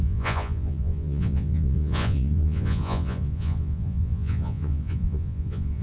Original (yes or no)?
no